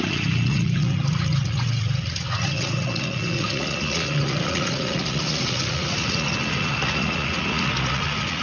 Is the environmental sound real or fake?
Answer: fake